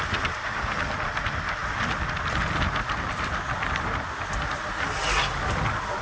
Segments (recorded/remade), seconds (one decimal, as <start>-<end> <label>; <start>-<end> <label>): 0.0-6.0 recorded